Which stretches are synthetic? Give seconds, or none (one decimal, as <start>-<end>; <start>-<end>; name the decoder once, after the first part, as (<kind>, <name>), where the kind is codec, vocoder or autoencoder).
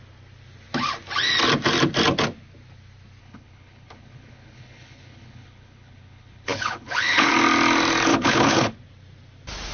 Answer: 3.2-7.3 (codec, HILCodec); 8.1-8.7